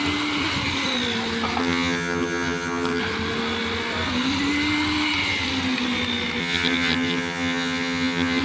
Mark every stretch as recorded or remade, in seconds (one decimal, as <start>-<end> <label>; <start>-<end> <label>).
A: 0.0-1.6 recorded; 1.6-3.0 remade; 3.0-6.4 recorded; 6.4-8.4 remade